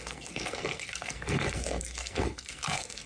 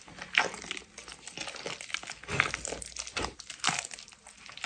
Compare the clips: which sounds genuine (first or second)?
second